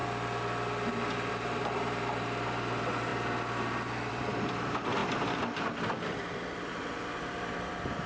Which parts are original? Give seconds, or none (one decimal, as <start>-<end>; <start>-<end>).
0.0-1.3; 3.1-4.1; 5.0-6.7

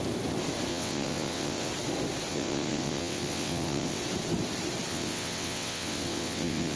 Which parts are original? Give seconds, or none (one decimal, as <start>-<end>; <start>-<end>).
0.0-0.7; 1.7-2.3; 4.0-4.9